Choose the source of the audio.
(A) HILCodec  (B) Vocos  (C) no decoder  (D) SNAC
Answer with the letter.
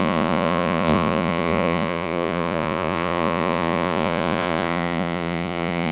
B